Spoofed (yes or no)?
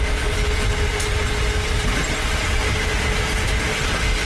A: no